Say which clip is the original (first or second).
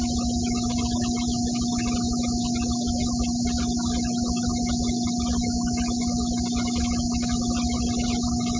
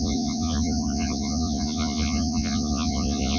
first